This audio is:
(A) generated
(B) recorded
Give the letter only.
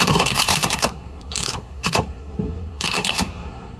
A